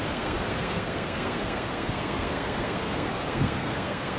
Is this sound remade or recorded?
remade